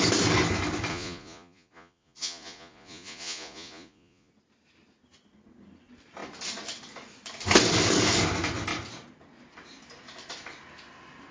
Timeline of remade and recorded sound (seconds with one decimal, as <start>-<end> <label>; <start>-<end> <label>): 0.0-0.9 recorded; 0.9-4.3 remade; 4.3-11.3 recorded